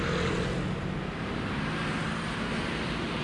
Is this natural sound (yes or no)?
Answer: yes